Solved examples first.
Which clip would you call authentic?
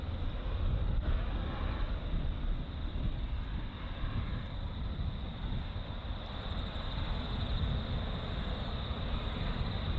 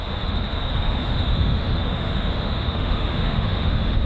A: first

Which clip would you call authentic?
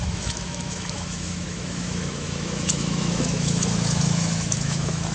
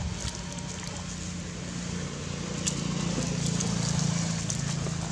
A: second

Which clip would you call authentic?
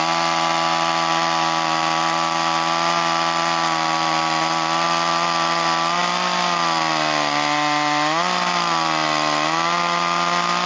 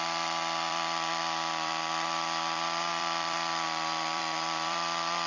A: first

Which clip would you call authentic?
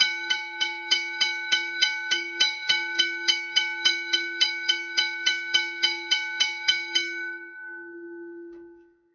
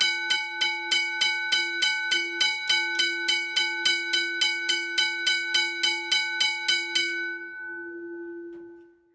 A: second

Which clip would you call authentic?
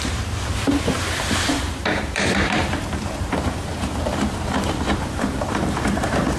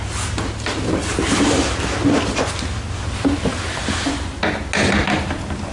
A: second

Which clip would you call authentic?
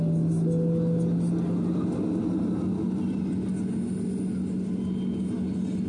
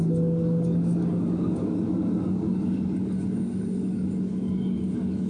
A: first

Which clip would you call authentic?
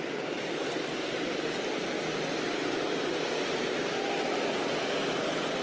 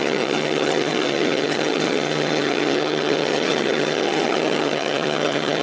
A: first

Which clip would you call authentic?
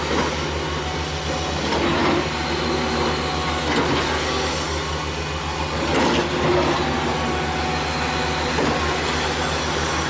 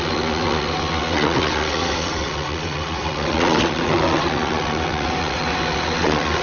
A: first